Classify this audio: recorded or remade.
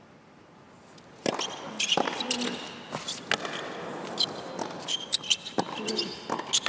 recorded